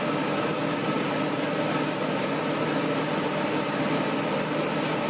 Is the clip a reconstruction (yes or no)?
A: no